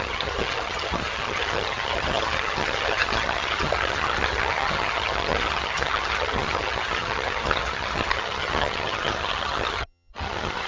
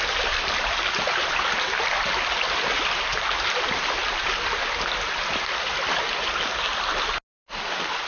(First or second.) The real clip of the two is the second